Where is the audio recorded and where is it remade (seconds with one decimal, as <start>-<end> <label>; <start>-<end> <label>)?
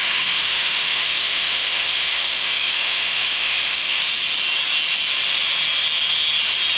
0.0-4.0 remade; 4.0-6.8 recorded